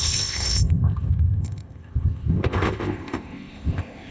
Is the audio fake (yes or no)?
yes